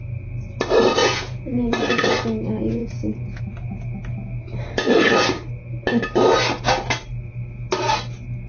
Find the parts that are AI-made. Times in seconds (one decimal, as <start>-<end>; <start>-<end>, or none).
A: 1.0-1.7; 2.8-3.4

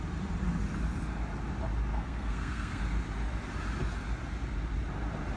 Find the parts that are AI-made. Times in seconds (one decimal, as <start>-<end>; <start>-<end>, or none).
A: 1.9-2.8

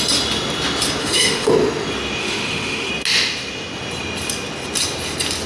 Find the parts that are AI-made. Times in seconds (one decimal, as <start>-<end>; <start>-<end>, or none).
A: 1.0-1.5; 2.2-2.9

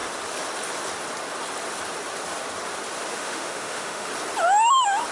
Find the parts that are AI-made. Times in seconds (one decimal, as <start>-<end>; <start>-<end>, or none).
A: 3.1-4.1

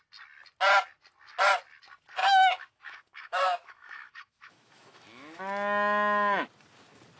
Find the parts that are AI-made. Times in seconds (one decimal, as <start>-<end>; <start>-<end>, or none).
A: 2.2-5.4

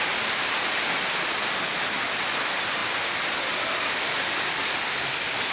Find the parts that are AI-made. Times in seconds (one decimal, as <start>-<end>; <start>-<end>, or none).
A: none

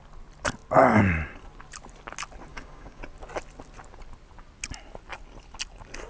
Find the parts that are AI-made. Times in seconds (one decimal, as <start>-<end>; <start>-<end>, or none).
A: 2.5-3.0